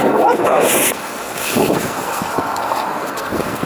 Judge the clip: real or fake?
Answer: fake